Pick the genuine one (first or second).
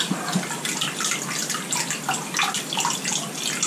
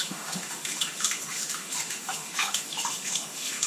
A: first